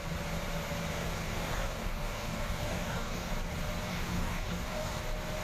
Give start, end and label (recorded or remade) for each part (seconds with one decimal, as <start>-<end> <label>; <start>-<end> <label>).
0.0-0.9 recorded; 0.9-3.3 remade; 3.3-3.9 recorded; 3.9-5.0 remade; 5.0-5.4 recorded